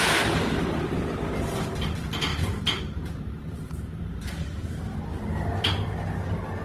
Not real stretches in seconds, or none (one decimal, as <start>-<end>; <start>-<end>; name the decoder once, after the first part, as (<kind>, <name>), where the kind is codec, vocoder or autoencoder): 2.3-4.3 (vocoder, BigVGAN v2)